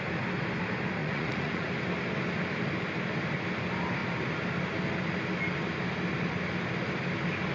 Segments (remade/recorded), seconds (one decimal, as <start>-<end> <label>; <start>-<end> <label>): 0.0-1.0 recorded; 1.0-1.7 remade; 1.7-7.5 recorded